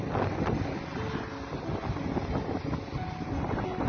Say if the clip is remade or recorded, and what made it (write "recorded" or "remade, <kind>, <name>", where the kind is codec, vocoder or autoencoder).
recorded